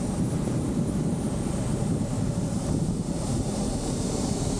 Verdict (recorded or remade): remade